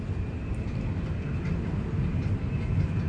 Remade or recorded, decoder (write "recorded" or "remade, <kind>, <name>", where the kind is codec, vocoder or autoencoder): recorded